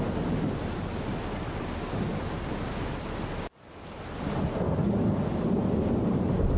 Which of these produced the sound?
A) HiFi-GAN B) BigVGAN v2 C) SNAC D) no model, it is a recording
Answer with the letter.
D